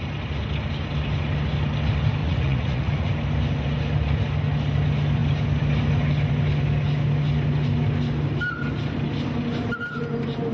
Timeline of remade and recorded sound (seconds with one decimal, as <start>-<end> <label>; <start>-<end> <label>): 0.0-2.2 recorded; 2.2-3.1 remade; 3.1-10.5 recorded